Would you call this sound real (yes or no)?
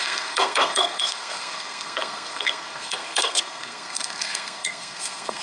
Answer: no